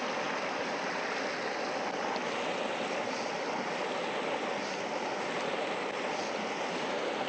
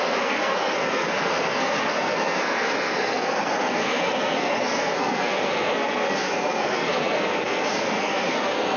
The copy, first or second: second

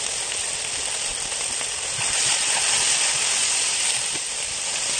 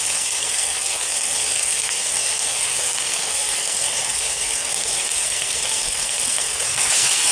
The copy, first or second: second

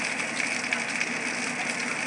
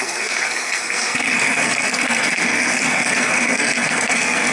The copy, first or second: second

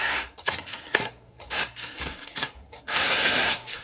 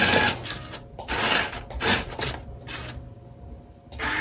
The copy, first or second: first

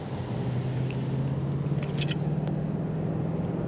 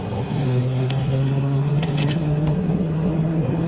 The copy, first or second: second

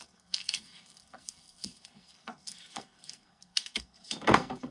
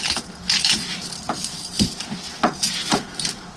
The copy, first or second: first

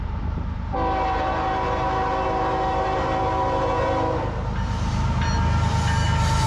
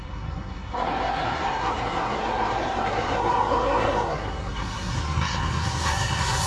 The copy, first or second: second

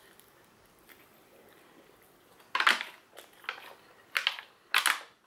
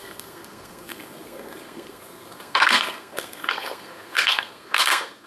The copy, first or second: second